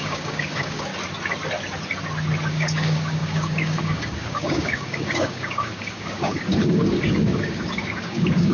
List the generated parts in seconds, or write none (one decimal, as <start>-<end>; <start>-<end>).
0.0-0.9; 2.5-8.5